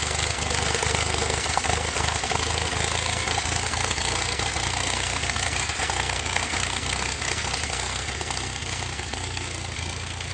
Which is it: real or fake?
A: fake